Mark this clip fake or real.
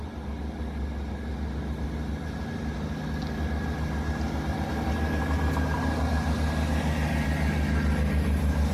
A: real